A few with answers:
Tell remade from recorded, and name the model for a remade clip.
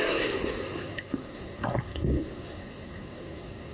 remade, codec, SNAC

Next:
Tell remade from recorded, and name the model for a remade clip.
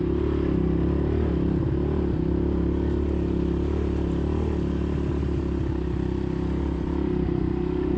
recorded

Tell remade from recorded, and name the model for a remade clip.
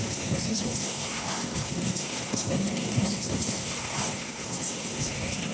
remade, codec, SNAC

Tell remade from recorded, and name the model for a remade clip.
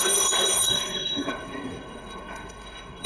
remade, codec, SNAC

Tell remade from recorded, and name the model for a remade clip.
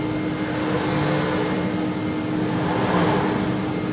recorded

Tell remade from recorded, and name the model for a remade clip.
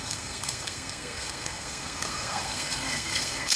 remade, codec, SNAC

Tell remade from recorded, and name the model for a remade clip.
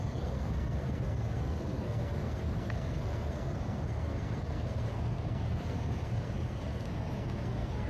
remade, codec, SNAC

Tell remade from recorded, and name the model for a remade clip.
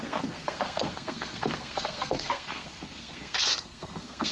remade, codec, SNAC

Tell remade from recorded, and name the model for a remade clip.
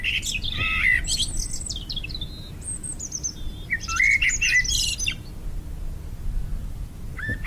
recorded